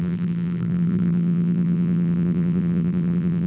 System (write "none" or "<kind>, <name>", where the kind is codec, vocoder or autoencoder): vocoder, BigVGAN v2